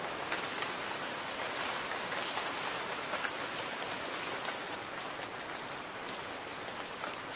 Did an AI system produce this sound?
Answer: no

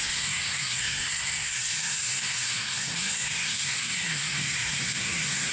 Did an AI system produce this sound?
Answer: yes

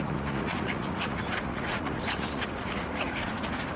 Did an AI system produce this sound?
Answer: yes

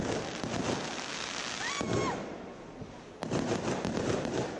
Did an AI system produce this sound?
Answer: no